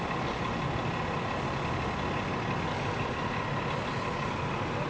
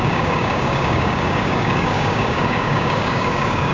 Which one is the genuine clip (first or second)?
first